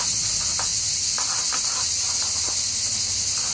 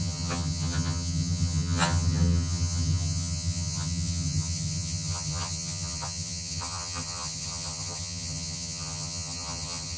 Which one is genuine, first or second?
first